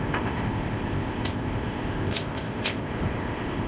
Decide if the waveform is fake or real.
fake